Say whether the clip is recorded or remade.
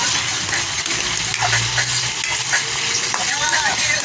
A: recorded